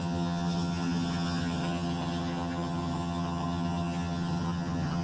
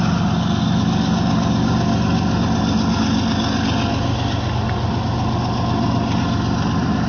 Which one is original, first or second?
second